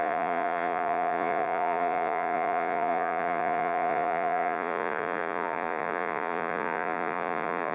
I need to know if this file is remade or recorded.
remade